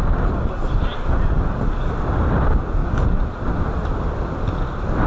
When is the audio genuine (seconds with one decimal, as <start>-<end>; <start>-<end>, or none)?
0.0-5.1